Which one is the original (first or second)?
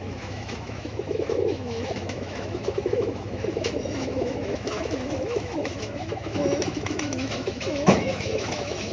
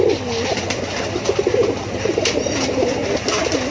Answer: second